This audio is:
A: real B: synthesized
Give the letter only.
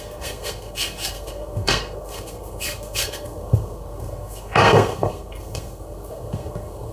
B